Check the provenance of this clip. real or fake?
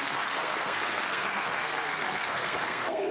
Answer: fake